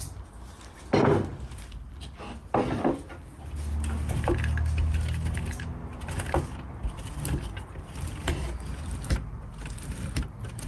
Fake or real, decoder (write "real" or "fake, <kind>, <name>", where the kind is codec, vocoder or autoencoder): real